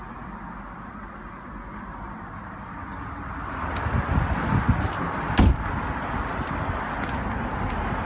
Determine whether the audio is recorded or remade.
recorded